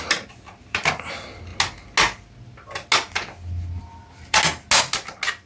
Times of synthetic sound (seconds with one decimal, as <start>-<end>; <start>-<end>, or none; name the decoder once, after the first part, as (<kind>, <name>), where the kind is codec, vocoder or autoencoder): none